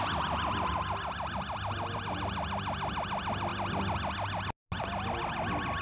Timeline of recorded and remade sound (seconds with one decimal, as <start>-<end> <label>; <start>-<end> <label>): 0.0-5.8 recorded